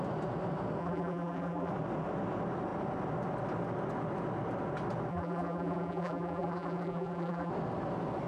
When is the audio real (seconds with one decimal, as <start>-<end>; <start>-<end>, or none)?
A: 0.0-0.8; 1.7-5.1; 7.5-8.3